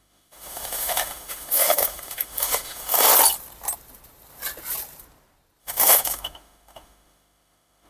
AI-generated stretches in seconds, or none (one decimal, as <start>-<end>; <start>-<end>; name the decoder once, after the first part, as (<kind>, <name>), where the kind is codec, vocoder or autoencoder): 0.0-3.1 (autoencoder, DAC-VAE); 5.6-7.9